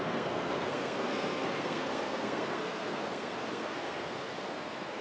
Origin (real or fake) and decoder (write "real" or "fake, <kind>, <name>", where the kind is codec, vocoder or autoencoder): fake, codec, SNAC